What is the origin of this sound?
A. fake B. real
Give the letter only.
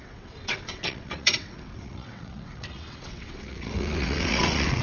A